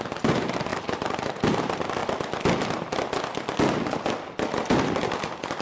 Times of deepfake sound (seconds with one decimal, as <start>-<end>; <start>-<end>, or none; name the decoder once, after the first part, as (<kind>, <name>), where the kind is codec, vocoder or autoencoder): 0.0-2.0 (vocoder, BigVGAN v2)